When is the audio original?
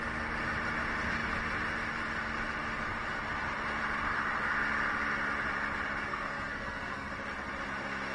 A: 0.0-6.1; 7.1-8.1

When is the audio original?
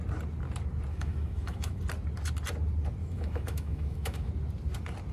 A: 0.0-0.9; 1.8-3.0; 4.3-5.1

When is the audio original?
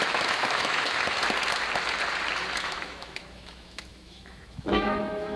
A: 1.2-2.6